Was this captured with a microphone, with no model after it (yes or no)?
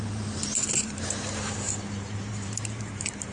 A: no